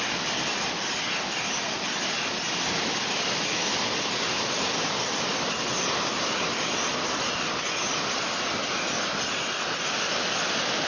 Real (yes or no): yes